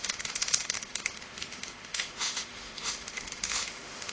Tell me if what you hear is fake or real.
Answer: fake